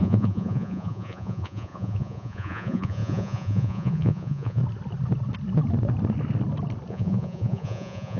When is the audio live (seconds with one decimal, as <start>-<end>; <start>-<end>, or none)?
4.6-6.9